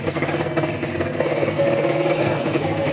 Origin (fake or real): fake